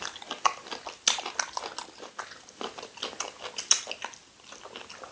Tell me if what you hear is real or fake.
real